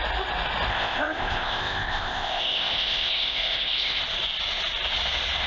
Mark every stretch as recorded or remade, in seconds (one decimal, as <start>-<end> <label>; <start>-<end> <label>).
0.0-0.7 recorded; 0.7-4.0 remade; 4.0-5.5 recorded